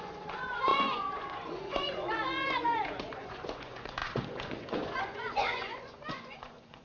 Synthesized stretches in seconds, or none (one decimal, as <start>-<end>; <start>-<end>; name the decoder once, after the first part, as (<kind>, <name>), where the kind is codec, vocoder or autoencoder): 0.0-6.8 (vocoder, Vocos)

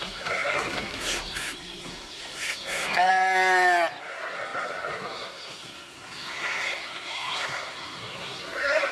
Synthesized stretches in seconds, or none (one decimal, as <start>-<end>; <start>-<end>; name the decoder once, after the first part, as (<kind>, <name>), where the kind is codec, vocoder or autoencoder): 0.0-3.1 (codec, SNAC); 4.0-8.9

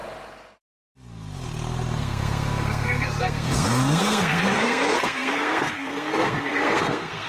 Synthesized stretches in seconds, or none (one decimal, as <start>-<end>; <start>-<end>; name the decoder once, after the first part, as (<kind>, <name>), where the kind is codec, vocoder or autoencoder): 2.0-7.3 (codec, SNAC)

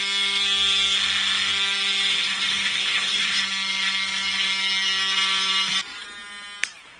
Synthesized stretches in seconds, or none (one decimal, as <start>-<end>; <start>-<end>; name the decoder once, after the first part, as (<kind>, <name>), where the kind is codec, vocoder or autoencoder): 2.1-3.4 (codec, HILCodec)